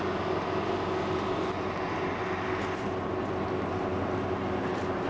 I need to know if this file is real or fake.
real